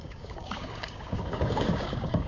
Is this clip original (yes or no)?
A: no